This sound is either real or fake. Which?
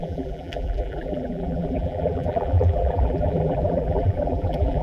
fake